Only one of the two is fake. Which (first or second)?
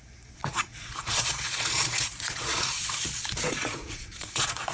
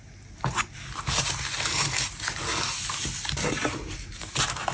first